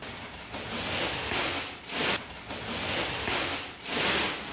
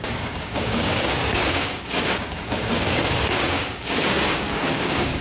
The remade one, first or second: second